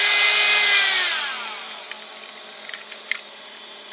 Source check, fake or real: fake